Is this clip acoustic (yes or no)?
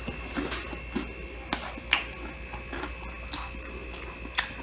yes